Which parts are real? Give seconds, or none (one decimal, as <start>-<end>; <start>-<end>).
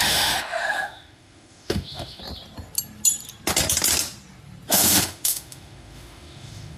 2.2-4.7